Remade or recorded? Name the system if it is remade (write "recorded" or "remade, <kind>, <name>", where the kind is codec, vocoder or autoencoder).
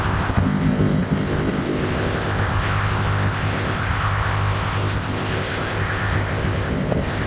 remade, codec, ZipCodec